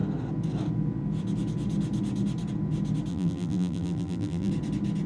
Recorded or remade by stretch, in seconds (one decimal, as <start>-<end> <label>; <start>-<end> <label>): 0.0-3.1 recorded; 3.1-4.5 remade; 4.5-5.1 recorded